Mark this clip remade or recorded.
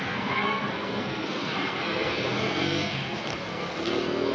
remade